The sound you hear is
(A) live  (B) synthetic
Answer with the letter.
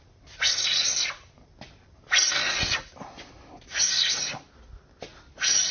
A